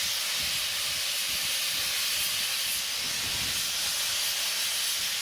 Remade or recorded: recorded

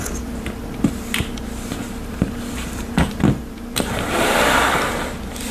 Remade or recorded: remade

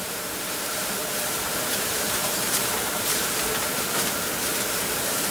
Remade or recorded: remade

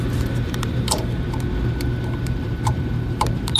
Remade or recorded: remade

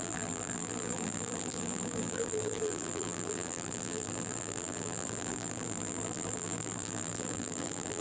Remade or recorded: remade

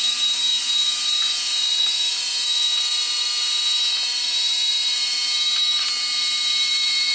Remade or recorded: remade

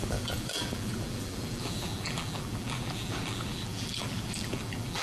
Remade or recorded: remade